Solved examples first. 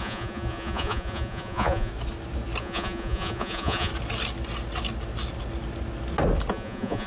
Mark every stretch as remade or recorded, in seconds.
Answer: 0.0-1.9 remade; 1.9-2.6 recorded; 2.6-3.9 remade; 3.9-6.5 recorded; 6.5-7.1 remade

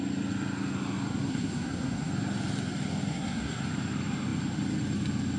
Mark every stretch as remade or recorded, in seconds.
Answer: 0.0-1.3 recorded; 1.3-2.1 remade; 2.1-3.1 recorded; 3.1-3.6 remade; 3.6-5.4 recorded

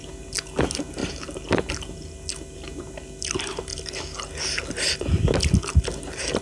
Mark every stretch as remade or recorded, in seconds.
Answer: 0.0-6.4 recorded